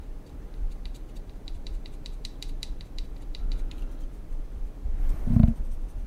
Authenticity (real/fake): fake